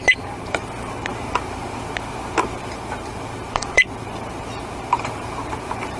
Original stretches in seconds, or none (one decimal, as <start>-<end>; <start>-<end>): none